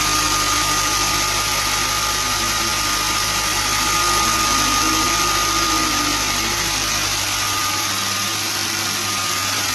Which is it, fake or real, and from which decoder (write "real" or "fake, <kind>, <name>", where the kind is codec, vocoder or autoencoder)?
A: real